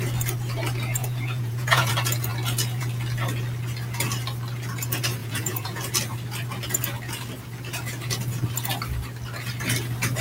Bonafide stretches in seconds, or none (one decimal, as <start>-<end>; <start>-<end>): 0.0-1.0; 1.9-5.2; 5.8-10.2